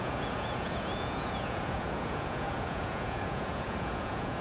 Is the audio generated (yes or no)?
yes